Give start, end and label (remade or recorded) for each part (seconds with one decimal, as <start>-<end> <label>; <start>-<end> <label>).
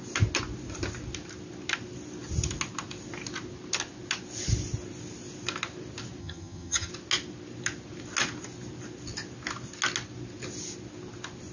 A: 0.0-6.2 recorded; 6.2-6.9 remade; 6.9-11.5 recorded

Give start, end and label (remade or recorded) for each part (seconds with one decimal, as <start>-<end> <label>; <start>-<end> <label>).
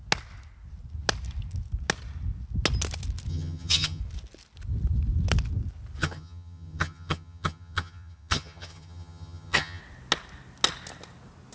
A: 0.0-3.3 recorded; 3.3-4.0 remade; 4.0-6.0 recorded; 6.0-9.8 remade; 9.8-11.5 recorded